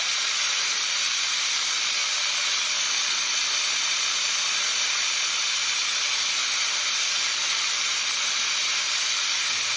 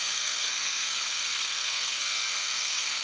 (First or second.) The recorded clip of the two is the first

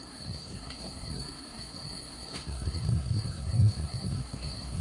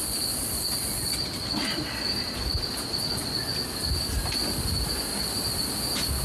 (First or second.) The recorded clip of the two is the second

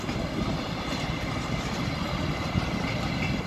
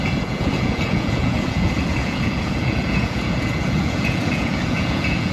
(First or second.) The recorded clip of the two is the first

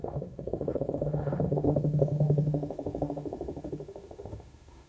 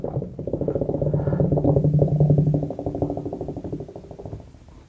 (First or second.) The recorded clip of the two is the second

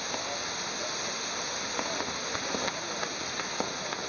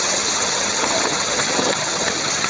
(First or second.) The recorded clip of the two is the first